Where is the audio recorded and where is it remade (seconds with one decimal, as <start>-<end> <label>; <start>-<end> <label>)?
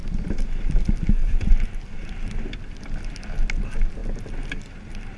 0.0-1.2 recorded; 1.2-2.6 remade; 2.6-5.2 recorded